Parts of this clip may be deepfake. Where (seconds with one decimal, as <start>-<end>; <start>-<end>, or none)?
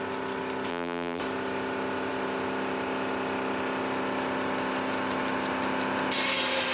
0.7-1.2